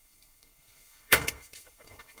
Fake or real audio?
fake